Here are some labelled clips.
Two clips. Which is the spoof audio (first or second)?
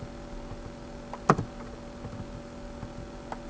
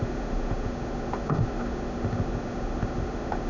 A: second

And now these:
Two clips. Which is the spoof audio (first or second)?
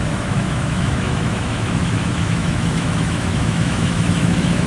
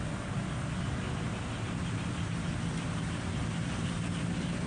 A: first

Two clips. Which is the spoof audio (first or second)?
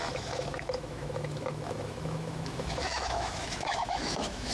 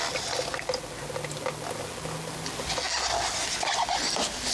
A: first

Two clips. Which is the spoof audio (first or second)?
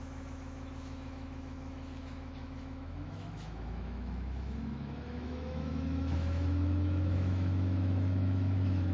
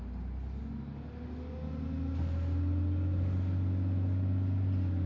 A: first